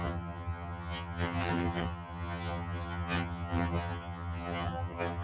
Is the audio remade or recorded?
remade